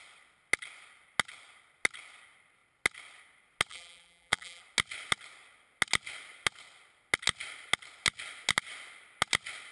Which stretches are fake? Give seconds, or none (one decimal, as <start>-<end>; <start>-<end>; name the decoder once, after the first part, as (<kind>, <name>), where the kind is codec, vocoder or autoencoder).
3.7-4.6 (vocoder, BigVGAN v2)